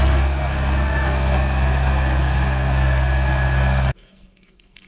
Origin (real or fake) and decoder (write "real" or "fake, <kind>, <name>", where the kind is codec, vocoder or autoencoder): fake, codec, SNAC